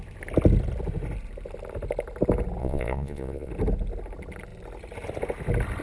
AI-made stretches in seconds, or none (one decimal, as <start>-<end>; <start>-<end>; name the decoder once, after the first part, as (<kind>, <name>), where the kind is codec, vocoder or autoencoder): 2.6-3.5 (vocoder, Vocos)